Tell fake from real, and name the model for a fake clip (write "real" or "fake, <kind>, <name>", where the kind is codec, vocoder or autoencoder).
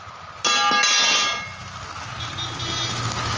real